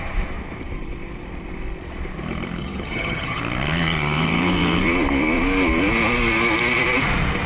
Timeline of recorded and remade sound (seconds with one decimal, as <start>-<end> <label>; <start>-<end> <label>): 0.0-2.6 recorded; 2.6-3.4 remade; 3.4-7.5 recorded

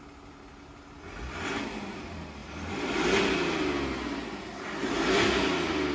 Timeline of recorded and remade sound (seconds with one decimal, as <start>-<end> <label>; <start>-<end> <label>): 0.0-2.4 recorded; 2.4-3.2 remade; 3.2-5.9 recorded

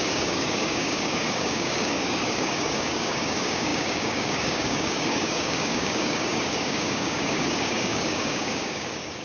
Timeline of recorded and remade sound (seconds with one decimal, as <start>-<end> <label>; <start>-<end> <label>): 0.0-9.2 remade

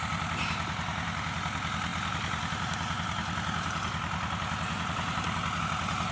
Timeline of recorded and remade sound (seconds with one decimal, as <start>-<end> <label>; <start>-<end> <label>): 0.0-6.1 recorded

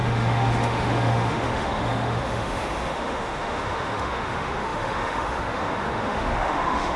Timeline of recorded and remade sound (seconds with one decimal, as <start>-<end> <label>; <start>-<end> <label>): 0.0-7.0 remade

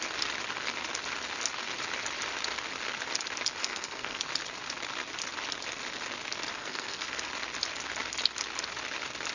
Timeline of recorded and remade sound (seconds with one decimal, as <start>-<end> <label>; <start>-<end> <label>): 0.0-3.6 recorded; 3.6-4.2 remade; 4.2-6.6 recorded; 6.6-7.3 remade; 7.3-9.3 recorded